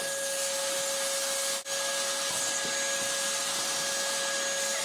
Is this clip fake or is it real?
real